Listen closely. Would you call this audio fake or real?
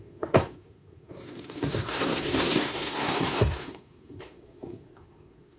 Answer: fake